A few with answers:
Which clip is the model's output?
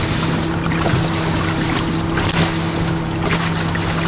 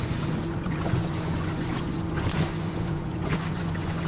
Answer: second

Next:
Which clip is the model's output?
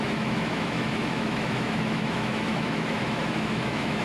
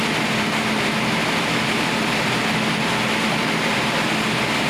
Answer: first